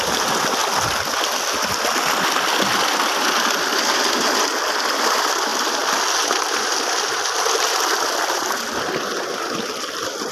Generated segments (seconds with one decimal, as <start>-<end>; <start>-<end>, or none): none

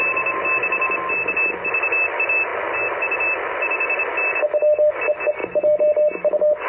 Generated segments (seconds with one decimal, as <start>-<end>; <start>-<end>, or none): none

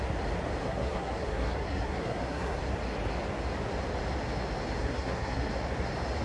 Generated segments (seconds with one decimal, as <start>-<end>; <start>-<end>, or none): 0.6-2.6; 4.8-5.5

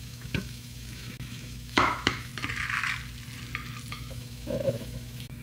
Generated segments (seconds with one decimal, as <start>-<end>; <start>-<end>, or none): 0.0-2.3; 3.9-5.4

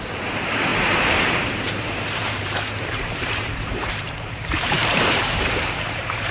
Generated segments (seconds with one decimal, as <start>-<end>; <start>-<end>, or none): 0.0-6.3

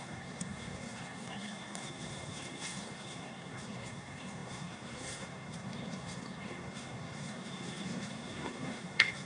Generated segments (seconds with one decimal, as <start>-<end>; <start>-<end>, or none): 0.0-9.3